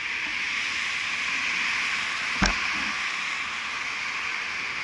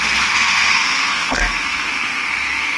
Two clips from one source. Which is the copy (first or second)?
second